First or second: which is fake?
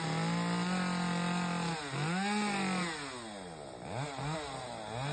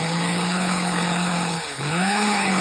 second